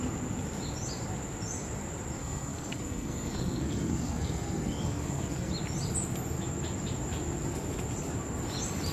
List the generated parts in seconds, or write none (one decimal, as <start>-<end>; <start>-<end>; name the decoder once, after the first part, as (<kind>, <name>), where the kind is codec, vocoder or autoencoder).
2.2-5.5 (codec, SNAC)